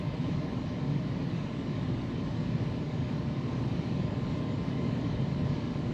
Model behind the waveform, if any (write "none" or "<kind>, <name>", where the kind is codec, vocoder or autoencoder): codec, DAC